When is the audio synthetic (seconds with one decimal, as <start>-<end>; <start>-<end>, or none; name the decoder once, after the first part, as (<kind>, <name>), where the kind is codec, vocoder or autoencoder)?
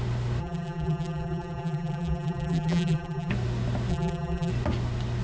0.4-3.3 (vocoder, BigVGAN v2); 3.9-4.5